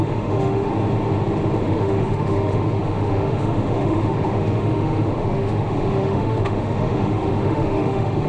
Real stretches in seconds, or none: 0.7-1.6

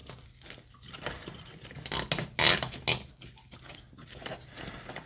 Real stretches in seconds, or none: 0.0-5.1

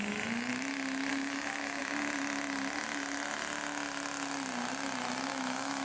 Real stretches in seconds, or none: 0.5-1.1; 1.8-5.3

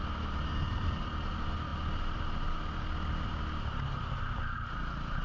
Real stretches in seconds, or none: 0.0-5.2

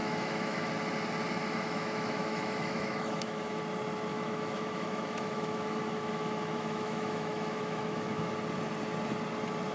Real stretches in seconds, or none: 0.7-1.4; 3.6-4.1; 8.3-9.7

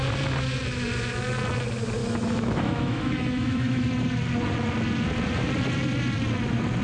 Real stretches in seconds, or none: 0.0-2.0; 3.8-6.8

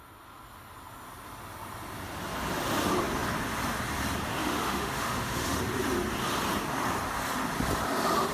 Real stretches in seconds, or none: 0.0-4.4; 5.6-8.3

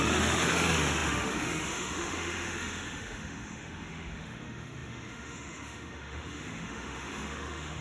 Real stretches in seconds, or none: none